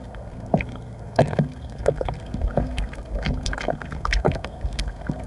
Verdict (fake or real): fake